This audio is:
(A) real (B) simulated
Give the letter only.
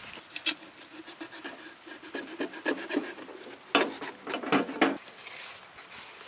A